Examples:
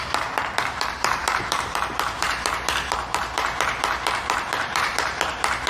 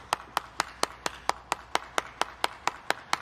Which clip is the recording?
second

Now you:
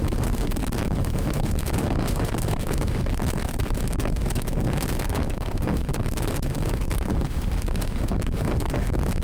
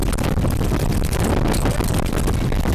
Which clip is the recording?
second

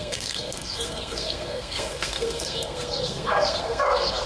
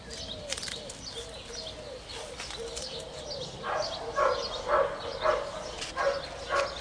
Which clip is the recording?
second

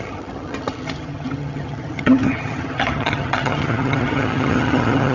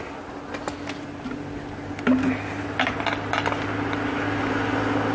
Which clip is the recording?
second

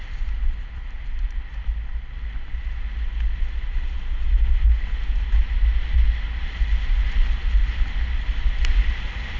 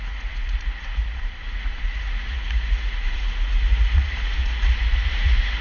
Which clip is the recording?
first